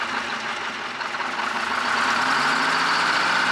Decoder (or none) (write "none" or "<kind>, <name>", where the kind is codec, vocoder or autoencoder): none